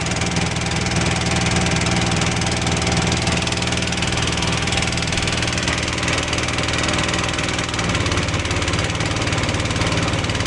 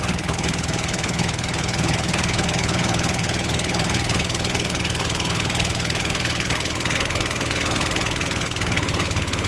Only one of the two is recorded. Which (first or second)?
first